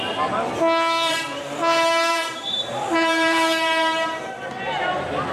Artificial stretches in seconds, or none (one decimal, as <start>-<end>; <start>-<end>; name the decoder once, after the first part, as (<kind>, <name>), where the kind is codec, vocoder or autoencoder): 1.1-4.3 (vocoder, BigVGAN v2)